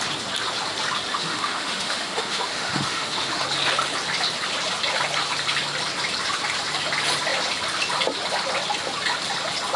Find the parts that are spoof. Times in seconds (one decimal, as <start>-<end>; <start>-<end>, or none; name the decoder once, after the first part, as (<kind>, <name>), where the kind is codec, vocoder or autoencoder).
1.1-3.4 (autoencoder, DAC-VAE)